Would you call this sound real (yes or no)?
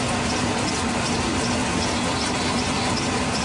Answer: yes